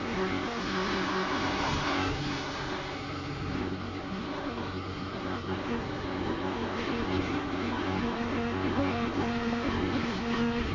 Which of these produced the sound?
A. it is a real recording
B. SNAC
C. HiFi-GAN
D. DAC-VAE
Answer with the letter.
B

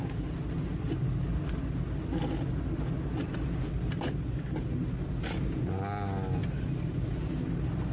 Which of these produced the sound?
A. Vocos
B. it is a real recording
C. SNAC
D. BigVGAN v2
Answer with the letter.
B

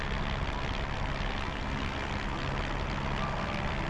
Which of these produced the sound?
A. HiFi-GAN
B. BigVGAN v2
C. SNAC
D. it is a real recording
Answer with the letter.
D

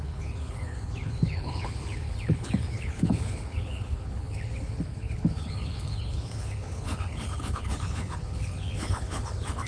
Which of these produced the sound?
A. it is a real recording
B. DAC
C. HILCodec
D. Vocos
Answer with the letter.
C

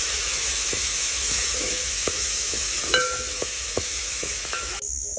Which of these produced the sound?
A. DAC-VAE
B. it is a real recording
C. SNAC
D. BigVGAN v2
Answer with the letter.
A